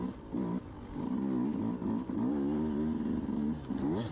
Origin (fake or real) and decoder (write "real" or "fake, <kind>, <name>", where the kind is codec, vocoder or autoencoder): real